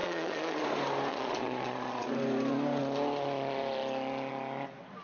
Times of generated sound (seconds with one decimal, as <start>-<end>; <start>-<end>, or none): 0.0-0.6; 1.1-2.1